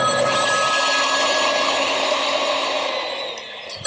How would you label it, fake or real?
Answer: real